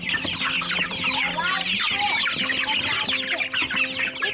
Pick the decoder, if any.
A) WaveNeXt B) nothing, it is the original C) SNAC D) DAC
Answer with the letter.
B